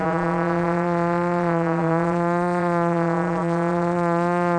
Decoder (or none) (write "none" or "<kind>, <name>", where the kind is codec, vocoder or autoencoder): vocoder, Vocos